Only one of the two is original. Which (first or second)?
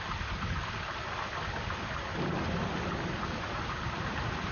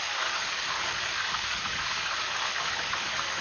first